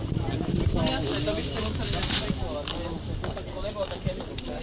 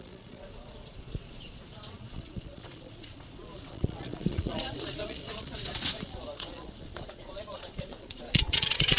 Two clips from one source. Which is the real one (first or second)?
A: first